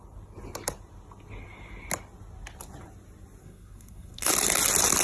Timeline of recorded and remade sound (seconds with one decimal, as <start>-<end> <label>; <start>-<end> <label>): 0.0-3.4 recorded; 3.4-4.3 remade; 4.3-5.0 recorded